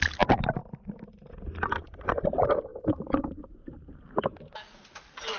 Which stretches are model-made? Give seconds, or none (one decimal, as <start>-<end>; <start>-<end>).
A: none